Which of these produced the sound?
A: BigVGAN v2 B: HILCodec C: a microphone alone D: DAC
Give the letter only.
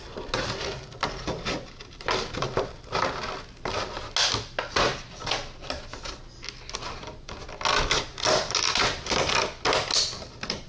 C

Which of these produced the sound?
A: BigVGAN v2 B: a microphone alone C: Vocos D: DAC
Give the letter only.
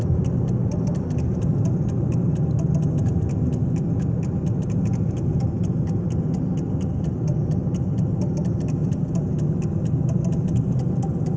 B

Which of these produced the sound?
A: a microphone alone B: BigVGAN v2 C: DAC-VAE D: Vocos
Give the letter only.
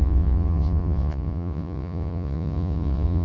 D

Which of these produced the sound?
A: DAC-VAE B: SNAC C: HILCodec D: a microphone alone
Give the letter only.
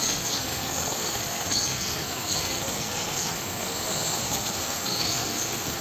B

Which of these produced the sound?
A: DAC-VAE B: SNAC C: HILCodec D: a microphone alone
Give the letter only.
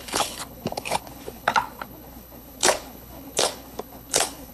C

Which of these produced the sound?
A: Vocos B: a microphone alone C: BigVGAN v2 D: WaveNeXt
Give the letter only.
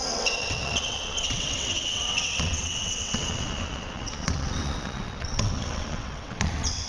D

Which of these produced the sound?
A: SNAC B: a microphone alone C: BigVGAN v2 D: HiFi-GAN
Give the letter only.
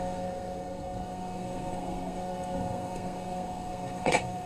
A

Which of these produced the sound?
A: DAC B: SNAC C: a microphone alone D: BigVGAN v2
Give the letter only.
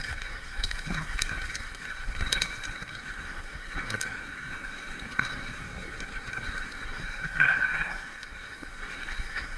B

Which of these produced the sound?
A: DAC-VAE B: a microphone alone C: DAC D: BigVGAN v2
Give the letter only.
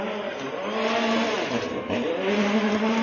B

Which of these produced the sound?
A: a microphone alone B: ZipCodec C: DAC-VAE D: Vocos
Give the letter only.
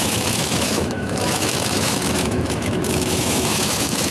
C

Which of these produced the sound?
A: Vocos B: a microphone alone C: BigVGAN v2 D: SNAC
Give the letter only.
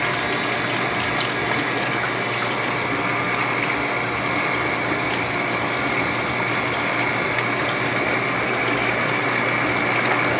B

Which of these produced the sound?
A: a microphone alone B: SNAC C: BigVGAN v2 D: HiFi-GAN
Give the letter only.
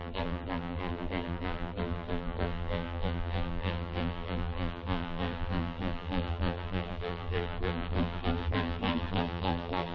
C